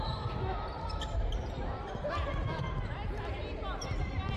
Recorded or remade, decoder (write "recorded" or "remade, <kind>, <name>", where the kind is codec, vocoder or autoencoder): recorded